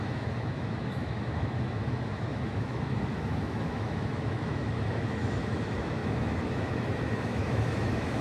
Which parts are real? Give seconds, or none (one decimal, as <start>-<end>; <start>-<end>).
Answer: none

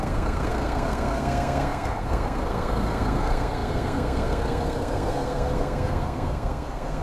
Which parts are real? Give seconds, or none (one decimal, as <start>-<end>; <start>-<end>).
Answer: none

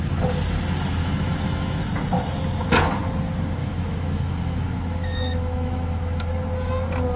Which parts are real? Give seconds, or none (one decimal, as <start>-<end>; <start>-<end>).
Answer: 0.0-1.0; 1.8-3.6; 6.3-7.2

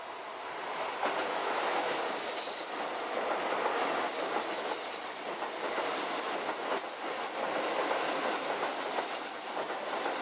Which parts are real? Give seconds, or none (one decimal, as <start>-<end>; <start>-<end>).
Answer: 0.0-1.4; 2.0-10.2

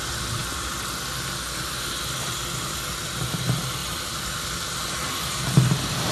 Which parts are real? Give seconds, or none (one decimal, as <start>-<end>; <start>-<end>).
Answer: 0.0-6.1

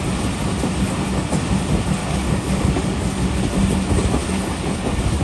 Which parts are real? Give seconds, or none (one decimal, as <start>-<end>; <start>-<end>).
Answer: 0.0-2.0; 3.3-4.2

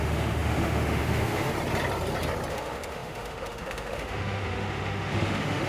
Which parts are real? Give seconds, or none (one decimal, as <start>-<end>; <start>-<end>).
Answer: 1.5-2.5

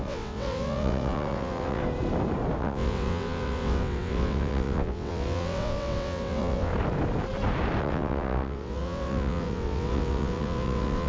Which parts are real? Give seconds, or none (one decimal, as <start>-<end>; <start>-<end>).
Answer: 1.8-2.6; 6.7-7.8